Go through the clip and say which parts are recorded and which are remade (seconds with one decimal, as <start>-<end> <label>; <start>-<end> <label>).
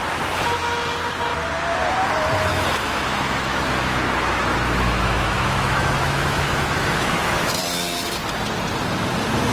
0.0-2.5 recorded; 2.5-7.3 remade; 7.3-9.5 recorded